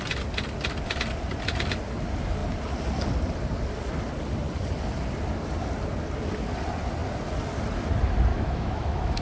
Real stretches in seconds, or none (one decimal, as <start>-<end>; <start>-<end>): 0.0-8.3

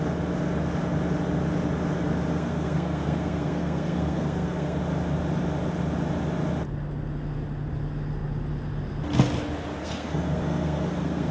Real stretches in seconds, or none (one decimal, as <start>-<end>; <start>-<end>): 0.0-2.3; 4.8-9.8

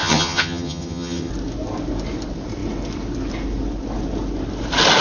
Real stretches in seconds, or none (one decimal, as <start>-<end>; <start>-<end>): 1.3-5.0

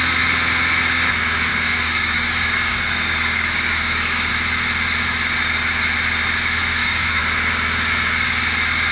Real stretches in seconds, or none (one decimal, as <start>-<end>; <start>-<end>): 0.0-1.5; 4.3-6.6; 7.2-8.9

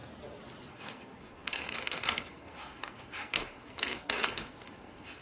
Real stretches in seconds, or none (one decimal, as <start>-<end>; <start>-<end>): 0.0-0.7

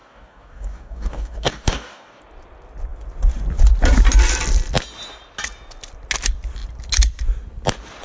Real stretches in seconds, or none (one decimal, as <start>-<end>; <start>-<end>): 2.2-8.0